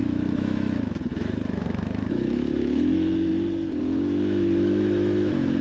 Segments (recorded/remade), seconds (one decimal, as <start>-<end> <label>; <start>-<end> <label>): 0.0-3.3 remade; 3.3-3.8 recorded; 3.8-5.6 remade